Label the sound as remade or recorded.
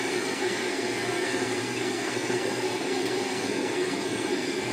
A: remade